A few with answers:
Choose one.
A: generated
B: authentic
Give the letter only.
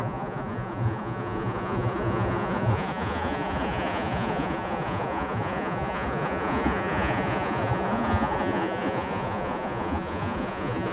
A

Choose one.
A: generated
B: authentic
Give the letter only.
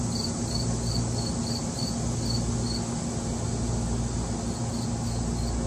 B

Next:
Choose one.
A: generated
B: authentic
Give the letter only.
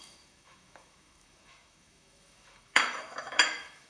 A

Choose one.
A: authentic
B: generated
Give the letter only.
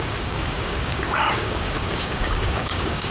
B